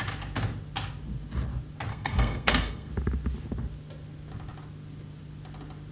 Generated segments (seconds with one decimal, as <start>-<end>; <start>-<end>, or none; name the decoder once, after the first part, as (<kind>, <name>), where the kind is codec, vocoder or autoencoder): 1.9-2.9 (codec, SNAC)